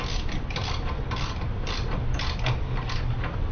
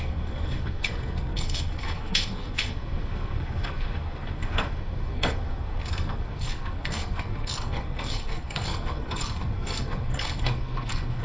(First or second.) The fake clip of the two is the second